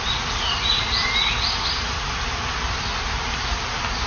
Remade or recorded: recorded